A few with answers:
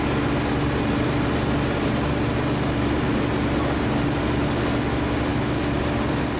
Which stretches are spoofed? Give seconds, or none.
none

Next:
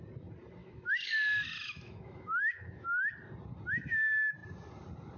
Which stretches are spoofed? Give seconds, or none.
0.6-3.1 (autoencoder, DAC-VAE)

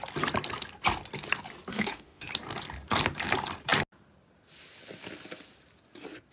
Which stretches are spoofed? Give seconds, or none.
1.7-2.3 (autoencoder, DAC-VAE)

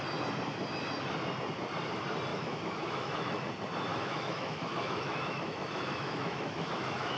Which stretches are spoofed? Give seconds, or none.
2.3-3.5 (autoencoder, DAC-VAE); 3.9-7.2

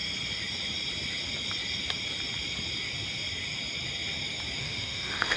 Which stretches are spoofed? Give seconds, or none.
4.6-5.4 (autoencoder, DAC-VAE)